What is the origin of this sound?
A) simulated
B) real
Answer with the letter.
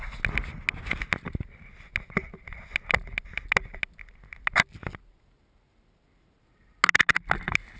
B